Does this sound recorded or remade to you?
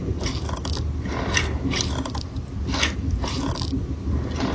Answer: recorded